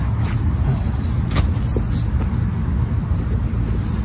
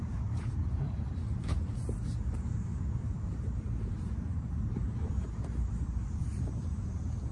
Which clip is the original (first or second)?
first